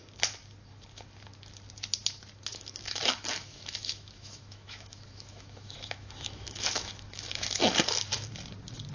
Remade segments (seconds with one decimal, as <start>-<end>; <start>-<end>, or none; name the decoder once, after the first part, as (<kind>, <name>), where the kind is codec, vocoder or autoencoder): 2.5-7.7 (autoencoder, DAC-VAE)